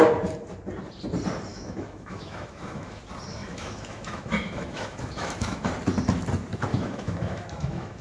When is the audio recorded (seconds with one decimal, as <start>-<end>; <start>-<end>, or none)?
0.0-1.5; 3.0-3.4; 5.7-6.7